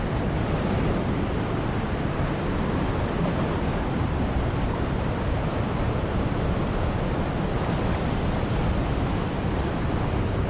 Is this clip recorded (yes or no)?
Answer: yes